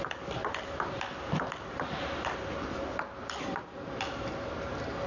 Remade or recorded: recorded